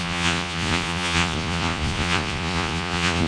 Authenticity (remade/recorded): remade